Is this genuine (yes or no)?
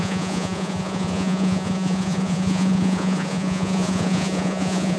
no